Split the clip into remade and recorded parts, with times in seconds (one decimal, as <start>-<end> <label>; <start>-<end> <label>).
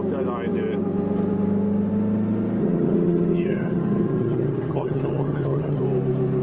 0.0-2.6 recorded; 2.6-5.8 remade; 5.8-6.4 recorded